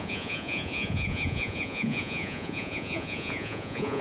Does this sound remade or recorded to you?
remade